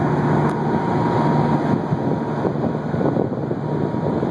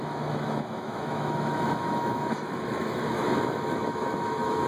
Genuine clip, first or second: first